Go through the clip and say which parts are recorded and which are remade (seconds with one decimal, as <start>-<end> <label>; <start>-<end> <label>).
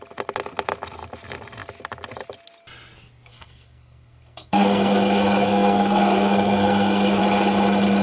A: 0.0-3.3 recorded; 3.3-7.2 remade; 7.2-8.0 recorded